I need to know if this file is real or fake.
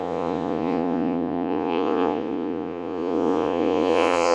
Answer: fake